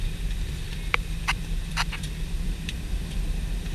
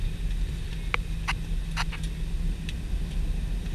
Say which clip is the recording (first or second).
second